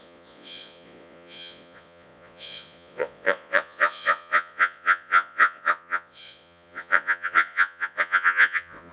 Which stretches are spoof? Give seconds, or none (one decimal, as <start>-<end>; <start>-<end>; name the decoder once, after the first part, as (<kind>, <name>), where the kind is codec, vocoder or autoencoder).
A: 0.0-8.9 (vocoder, Vocos)